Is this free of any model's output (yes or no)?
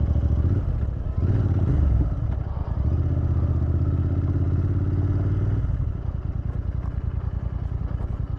yes